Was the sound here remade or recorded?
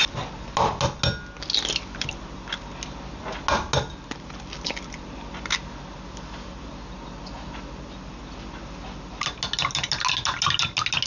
recorded